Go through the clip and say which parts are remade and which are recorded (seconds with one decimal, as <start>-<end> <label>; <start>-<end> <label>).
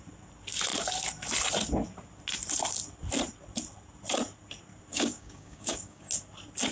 0.0-4.9 recorded; 4.9-6.1 remade; 6.1-6.7 recorded